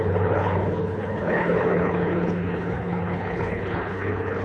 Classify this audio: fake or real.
fake